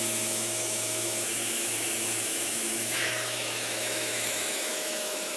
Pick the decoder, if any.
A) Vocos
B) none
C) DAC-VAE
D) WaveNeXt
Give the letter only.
C